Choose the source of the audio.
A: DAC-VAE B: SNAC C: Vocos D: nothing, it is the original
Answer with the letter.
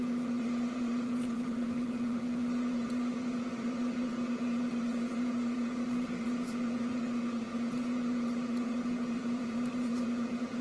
C